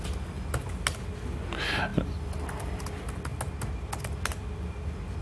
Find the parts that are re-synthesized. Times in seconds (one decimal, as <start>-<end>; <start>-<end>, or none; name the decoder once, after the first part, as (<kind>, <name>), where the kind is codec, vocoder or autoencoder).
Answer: none